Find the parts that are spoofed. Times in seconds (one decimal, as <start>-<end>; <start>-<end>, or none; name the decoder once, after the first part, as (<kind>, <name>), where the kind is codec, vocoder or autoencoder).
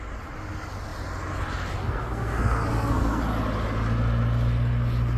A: 1.8-3.2 (codec, SNAC)